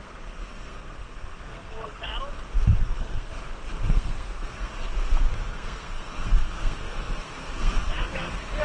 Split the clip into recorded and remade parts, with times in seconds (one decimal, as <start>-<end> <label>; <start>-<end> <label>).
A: 0.0-2.1 remade; 2.1-2.8 recorded; 2.8-3.3 remade; 3.3-3.9 recorded; 3.9-4.7 remade; 4.7-5.2 recorded; 5.2-8.6 remade